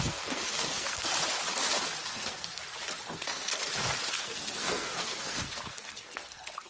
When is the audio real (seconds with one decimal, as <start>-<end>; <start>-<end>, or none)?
1.1-2.0; 2.6-3.1; 3.5-4.1